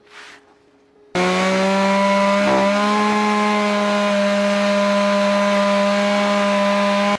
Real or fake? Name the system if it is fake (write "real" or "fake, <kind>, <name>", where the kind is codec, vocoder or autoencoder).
real